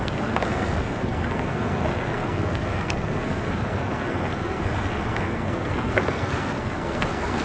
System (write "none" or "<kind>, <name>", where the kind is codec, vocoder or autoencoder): codec, SNAC